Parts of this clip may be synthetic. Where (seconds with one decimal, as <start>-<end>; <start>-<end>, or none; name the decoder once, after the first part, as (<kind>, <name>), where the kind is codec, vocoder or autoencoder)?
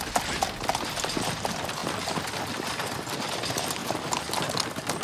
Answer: none